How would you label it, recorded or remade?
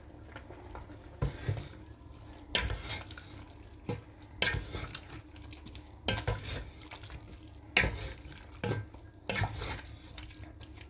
recorded